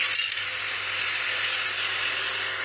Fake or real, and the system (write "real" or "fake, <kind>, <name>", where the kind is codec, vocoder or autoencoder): real